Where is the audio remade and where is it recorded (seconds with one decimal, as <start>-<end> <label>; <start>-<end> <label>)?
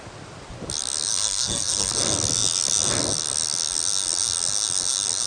0.0-1.1 recorded; 1.1-1.9 remade; 1.9-5.3 recorded